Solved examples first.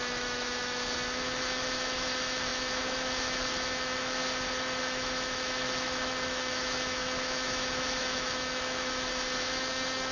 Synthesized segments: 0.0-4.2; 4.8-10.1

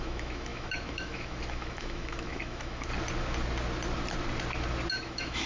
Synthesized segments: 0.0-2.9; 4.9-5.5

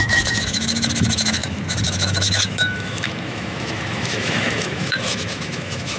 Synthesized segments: 0.0-6.0